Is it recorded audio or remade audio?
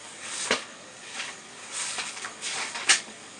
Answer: remade